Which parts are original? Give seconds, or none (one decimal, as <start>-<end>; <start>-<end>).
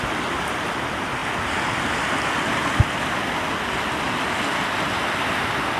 0.0-5.8